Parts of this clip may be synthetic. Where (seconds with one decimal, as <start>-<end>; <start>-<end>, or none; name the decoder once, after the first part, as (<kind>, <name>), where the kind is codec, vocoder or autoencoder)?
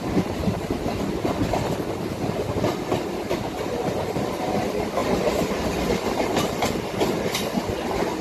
none